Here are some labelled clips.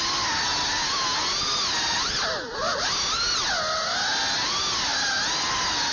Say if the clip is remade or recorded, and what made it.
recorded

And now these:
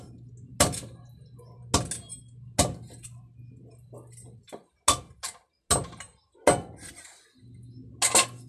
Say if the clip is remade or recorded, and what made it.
recorded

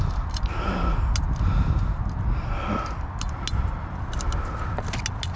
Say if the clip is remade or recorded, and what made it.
recorded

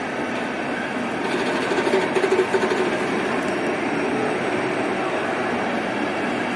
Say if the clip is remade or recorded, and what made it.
recorded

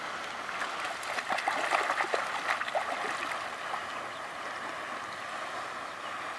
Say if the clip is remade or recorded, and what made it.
recorded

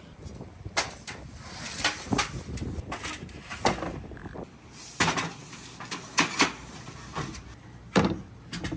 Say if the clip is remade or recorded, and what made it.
recorded